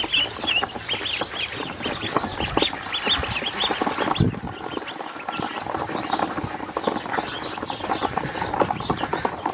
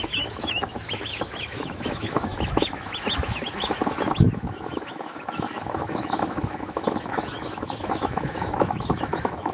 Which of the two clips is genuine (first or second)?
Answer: first